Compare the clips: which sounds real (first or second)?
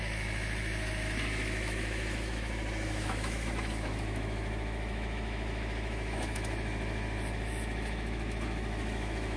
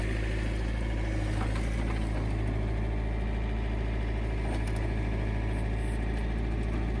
second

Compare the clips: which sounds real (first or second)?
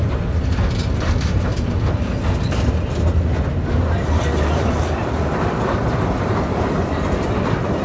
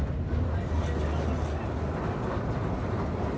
second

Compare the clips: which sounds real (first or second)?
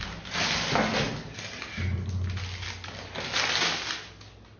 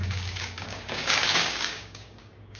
first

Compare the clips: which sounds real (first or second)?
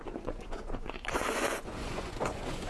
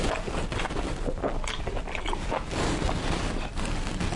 second